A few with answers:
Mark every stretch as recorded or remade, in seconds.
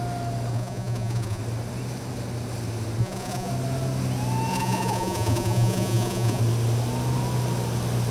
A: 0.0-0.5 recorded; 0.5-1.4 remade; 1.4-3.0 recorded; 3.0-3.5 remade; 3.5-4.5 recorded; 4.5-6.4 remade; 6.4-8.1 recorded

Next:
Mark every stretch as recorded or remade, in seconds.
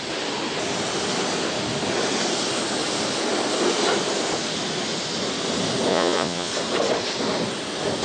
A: 0.0-5.9 recorded; 5.9-6.5 remade; 6.5-8.0 recorded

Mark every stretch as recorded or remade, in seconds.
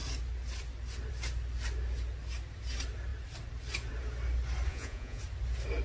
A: 0.0-4.7 recorded; 4.7-5.2 remade; 5.2-5.8 recorded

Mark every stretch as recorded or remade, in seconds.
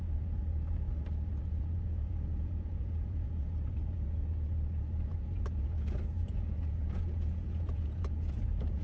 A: 0.0-1.5 recorded; 1.5-3.4 remade; 3.4-6.2 recorded; 6.2-8.8 remade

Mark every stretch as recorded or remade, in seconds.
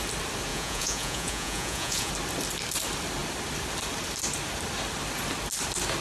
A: 0.0-0.5 recorded; 0.5-2.1 remade; 2.1-6.0 recorded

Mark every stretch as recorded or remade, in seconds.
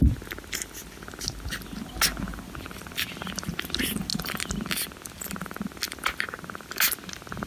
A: 0.0-7.5 recorded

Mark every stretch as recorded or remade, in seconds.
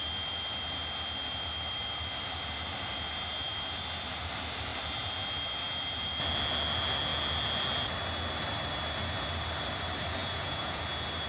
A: 0.0-10.2 recorded; 10.2-10.8 remade; 10.8-11.3 recorded